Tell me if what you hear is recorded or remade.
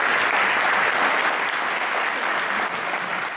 recorded